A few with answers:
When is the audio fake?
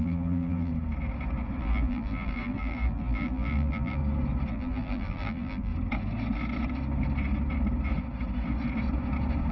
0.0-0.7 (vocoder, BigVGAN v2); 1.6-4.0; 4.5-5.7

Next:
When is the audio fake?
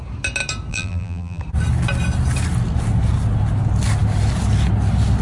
0.7-1.4 (vocoder, BigVGAN v2)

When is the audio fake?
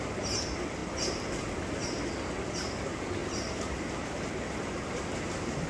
3.2-4.3 (vocoder, BigVGAN v2)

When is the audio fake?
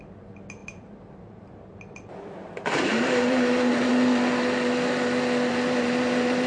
0.0-3.9 (vocoder, BigVGAN v2); 5.5-6.5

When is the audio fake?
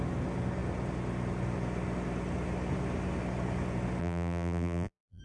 4.0-5.2 (vocoder, BigVGAN v2)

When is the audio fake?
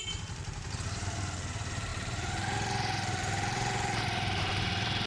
0.0-5.1 (vocoder, BigVGAN v2)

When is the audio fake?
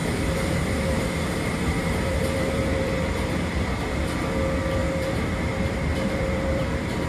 0.0-3.9 (vocoder, BigVGAN v2); 4.8-7.1